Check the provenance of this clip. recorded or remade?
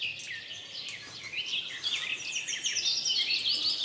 recorded